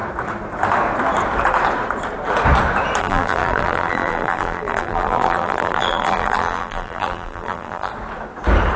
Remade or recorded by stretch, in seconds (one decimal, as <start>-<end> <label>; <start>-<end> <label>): 0.0-3.0 recorded; 3.0-7.9 remade; 7.9-8.8 recorded